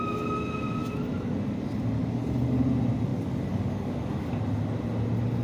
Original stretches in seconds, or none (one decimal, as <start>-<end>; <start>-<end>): 0.0-2.0; 2.6-3.1; 4.3-5.4